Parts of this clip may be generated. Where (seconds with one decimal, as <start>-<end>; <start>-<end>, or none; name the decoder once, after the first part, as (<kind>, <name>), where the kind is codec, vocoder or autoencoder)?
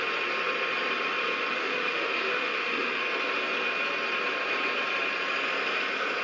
1.5-3.0 (autoencoder, DAC-VAE)